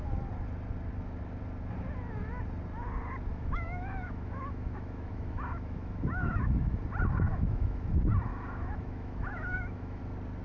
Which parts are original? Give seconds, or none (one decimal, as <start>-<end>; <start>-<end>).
0.0-3.3; 6.8-7.3; 7.9-8.3; 10.0-10.4